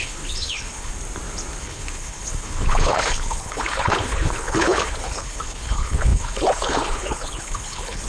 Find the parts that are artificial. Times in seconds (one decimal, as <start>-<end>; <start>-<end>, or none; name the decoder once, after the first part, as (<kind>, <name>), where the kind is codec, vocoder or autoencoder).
0.0-0.9 (codec, HILCodec); 1.6-8.1